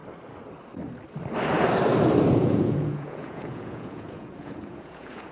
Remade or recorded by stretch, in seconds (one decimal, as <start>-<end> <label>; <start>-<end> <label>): 0.0-2.3 recorded; 2.3-5.3 remade